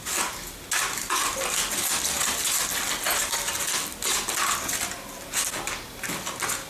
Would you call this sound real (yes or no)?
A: yes